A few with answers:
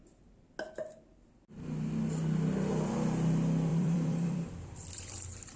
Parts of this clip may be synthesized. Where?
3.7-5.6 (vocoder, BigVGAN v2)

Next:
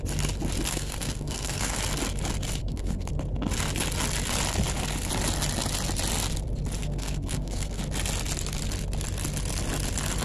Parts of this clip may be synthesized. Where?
0.7-1.8 (codec, SNAC); 2.6-3.1; 6.8-7.8

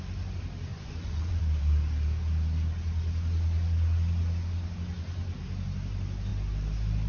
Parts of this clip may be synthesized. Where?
0.7-1.4 (vocoder, Vocos)

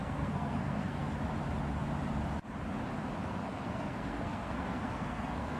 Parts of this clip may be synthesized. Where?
0.0-1.2 (codec, SNAC); 3.2-5.6

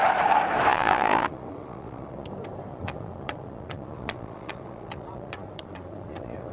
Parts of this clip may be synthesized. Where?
0.7-2.3 (vocoder, Vocos); 2.7-6.5

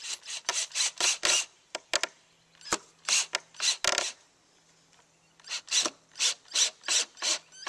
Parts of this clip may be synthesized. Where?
0.5-1.1 (vocoder, BigVGAN v2)

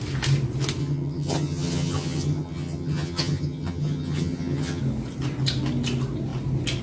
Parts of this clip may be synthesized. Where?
0.8-4.8 (vocoder, HiFi-GAN)